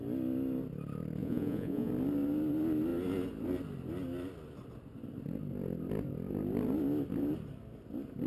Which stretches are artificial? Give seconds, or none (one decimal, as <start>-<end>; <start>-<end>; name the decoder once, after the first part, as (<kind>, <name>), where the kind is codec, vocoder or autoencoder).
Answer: 1.2-1.9 (vocoder, Vocos)

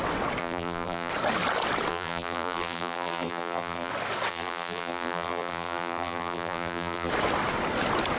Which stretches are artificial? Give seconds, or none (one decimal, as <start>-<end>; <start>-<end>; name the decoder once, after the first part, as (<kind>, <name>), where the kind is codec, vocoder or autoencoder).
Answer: 0.4-1.1 (vocoder, BigVGAN v2); 1.9-3.9; 4.3-7.1

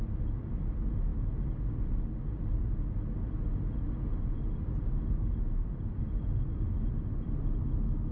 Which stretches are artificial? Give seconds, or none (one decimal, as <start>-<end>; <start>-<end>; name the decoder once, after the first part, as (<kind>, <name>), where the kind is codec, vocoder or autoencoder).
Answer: none

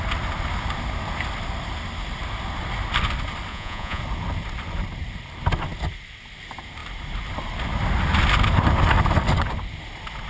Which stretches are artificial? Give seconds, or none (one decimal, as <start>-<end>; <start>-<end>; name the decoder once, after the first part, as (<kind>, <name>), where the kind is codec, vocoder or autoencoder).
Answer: 3.5-4.0 (vocoder, Vocos)

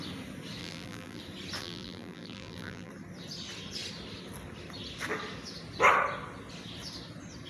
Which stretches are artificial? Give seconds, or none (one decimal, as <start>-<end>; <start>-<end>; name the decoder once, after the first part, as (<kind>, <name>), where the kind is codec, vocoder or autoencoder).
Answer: 0.6-1.2 (vocoder, BigVGAN v2); 1.6-2.9